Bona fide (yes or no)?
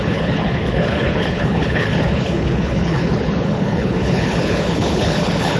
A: no